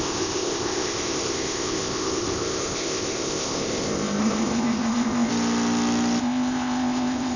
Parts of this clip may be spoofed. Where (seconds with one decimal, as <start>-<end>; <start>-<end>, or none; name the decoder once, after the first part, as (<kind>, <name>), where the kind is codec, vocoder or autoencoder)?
0.0-5.3 (codec, ZipCodec); 6.2-7.4